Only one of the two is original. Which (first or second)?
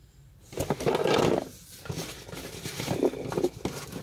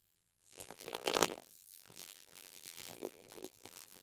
first